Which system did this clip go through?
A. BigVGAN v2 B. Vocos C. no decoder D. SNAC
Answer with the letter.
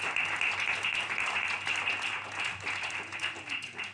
C